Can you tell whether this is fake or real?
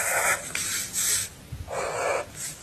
real